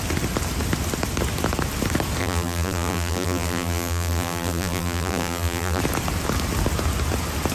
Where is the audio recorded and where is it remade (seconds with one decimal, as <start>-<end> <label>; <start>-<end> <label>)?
0.0-2.2 recorded; 2.2-5.8 remade; 5.8-7.5 recorded

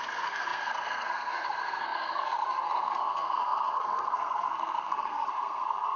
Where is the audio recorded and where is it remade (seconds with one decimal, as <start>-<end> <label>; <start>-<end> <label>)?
0.0-6.0 remade

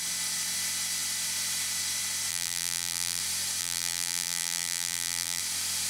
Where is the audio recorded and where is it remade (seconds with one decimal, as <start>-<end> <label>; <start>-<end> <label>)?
0.0-2.3 recorded; 2.3-3.2 remade; 3.2-3.6 recorded; 3.6-5.4 remade; 5.4-5.9 recorded

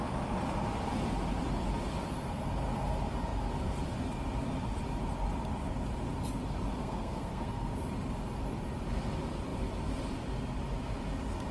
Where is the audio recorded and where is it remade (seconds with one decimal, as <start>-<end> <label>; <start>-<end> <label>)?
0.0-6.8 recorded; 6.8-7.7 remade; 7.7-11.5 recorded

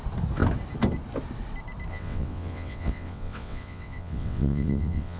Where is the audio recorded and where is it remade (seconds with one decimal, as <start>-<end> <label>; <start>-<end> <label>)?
0.0-1.9 recorded; 1.9-5.2 remade

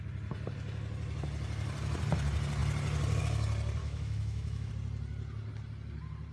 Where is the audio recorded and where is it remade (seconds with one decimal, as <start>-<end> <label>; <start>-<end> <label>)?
0.0-3.8 recorded; 3.8-4.7 remade; 4.7-6.3 recorded

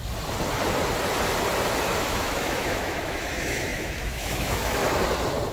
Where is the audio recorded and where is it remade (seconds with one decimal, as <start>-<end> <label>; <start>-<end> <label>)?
0.0-2.0 recorded; 2.0-4.8 remade; 4.8-5.5 recorded